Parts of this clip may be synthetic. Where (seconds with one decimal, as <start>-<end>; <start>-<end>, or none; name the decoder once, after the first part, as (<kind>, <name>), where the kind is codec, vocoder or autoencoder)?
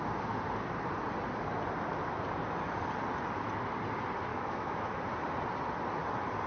4.3-5.0 (autoencoder, DAC-VAE)